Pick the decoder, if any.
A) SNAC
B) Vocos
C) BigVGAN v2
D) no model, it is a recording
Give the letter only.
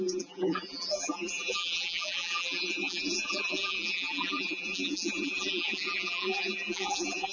C